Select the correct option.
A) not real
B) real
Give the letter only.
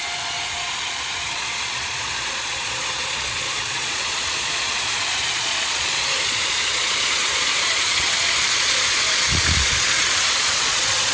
A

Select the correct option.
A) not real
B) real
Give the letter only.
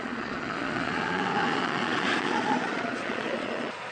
A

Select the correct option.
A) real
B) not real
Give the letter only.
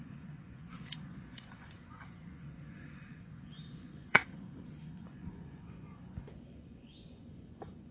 B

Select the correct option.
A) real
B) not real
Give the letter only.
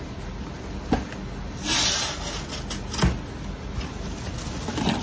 A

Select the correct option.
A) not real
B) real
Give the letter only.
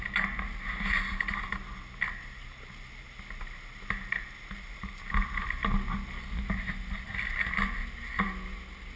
B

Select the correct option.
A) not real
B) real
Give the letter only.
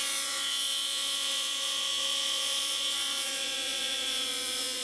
A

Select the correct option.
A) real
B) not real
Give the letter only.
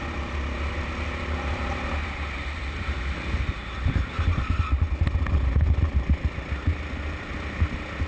A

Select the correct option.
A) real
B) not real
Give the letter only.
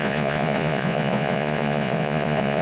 B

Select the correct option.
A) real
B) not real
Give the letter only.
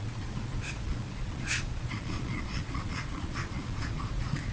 B